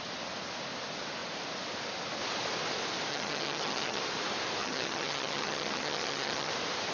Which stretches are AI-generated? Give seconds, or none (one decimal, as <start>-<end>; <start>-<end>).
3.1-4.0; 4.6-6.5